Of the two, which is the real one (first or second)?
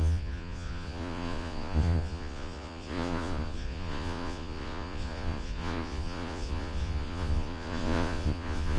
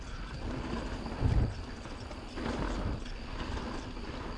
second